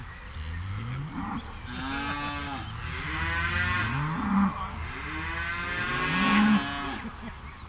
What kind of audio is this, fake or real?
real